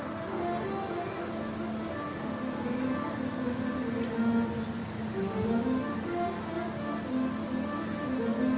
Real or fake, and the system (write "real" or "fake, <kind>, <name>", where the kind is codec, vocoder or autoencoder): real